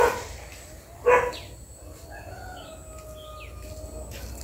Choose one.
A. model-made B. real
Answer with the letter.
B